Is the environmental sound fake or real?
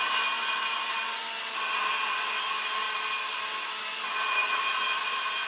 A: real